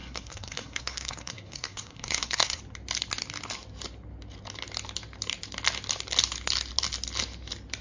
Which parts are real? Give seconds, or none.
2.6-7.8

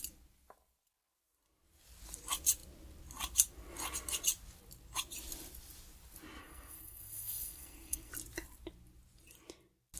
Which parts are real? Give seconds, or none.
0.0-6.4; 8.1-10.0

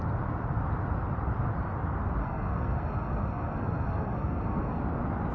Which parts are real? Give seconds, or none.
0.0-2.2; 4.8-5.3

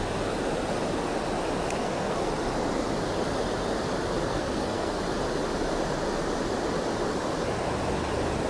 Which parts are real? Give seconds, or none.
0.0-1.8; 2.3-4.3; 5.0-8.5

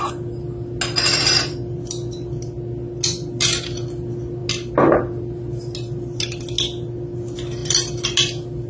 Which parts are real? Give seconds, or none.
0.0-8.7

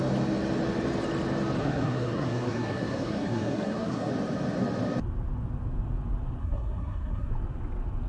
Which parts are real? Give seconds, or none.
0.0-1.6; 4.1-6.4; 7.3-8.1